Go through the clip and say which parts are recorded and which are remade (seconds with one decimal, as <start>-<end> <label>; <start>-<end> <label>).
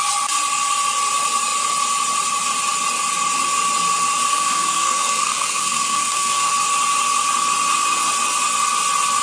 0.0-4.3 recorded; 4.3-6.5 remade; 6.5-9.2 recorded